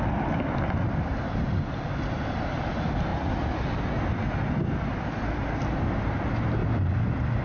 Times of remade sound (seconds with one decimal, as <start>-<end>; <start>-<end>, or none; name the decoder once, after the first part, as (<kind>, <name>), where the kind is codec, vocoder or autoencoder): none

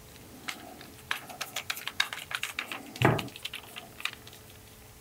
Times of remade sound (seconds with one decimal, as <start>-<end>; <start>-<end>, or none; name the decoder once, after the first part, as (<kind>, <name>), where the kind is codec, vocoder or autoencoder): none